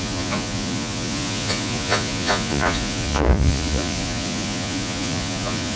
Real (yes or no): no